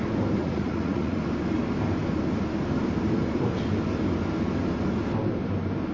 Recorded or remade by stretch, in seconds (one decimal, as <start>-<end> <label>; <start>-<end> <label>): 0.0-0.4 recorded; 0.4-1.2 remade; 1.2-5.9 recorded